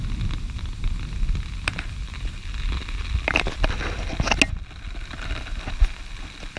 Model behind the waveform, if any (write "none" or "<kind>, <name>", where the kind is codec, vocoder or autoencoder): none